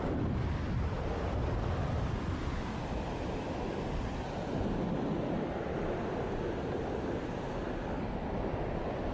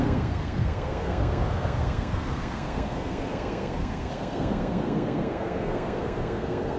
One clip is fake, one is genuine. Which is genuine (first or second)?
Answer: first